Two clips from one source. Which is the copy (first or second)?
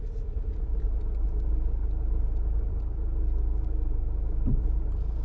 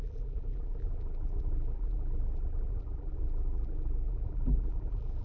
second